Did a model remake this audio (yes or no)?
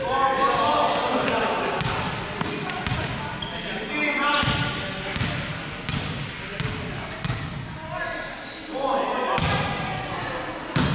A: no